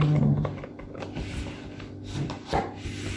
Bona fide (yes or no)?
yes